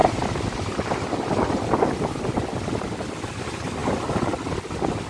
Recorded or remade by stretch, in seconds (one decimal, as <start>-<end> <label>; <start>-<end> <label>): 0.0-5.1 recorded